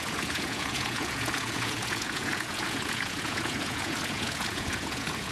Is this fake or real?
fake